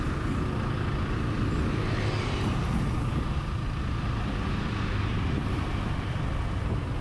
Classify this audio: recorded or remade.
recorded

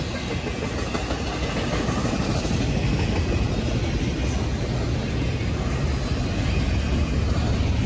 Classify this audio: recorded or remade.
recorded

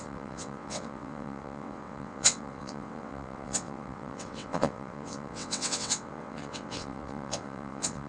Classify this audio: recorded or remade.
remade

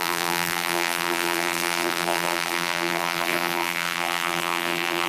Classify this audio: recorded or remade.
remade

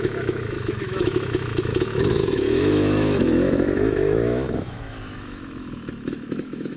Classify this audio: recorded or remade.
remade